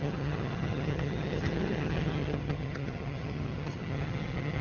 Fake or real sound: fake